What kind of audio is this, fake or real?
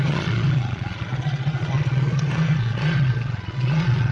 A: fake